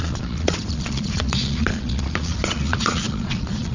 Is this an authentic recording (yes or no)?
no